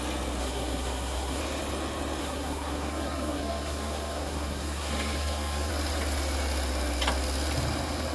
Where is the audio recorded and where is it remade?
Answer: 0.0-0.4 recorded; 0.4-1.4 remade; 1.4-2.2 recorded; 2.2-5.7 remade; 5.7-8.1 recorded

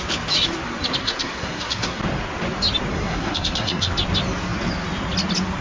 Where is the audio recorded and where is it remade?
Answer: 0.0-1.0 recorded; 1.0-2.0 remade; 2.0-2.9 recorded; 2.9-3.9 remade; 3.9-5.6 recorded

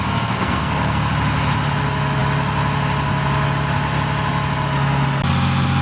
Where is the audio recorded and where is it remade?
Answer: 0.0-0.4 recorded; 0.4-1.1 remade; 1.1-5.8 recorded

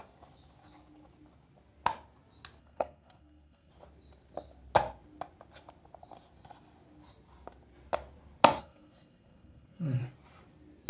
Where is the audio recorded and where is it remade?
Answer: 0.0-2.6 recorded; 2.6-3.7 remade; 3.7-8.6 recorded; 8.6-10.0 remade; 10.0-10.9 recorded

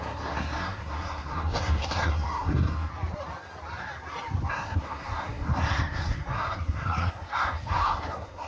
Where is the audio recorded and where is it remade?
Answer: 0.0-2.9 remade; 2.9-4.5 recorded; 4.5-8.5 remade